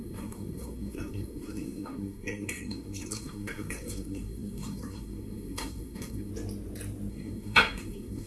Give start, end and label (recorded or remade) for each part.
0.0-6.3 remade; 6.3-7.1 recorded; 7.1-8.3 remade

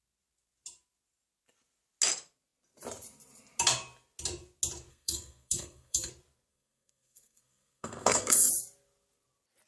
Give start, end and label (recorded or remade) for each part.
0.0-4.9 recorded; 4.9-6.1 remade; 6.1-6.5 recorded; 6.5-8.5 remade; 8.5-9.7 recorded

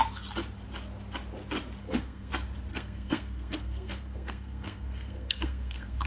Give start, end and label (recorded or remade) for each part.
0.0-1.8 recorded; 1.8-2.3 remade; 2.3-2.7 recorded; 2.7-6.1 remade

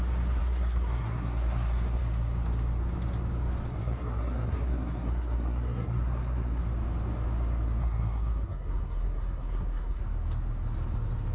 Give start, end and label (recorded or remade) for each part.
0.0-0.4 recorded; 0.4-2.0 remade; 2.0-3.7 recorded; 3.7-6.6 remade; 6.6-7.8 recorded; 7.8-10.0 remade; 10.0-11.3 recorded

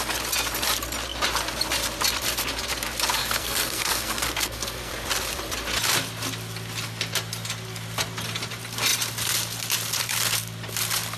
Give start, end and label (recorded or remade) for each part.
0.0-3.2 recorded; 3.2-4.9 remade; 4.9-11.2 recorded

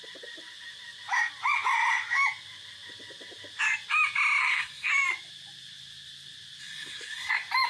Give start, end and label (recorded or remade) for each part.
0.0-4.4 recorded; 4.4-4.9 remade; 4.9-6.6 recorded; 6.6-7.3 remade; 7.3-7.7 recorded